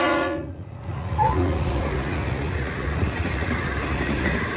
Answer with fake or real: fake